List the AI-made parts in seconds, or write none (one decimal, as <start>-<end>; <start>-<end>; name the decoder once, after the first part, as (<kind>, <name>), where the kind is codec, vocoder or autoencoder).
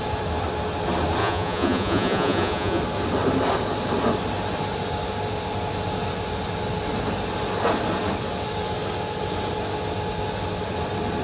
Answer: 1.2-2.8 (vocoder, Vocos)